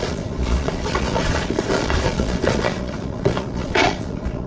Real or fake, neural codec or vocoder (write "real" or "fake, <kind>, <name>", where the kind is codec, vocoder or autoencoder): fake, vocoder, Vocos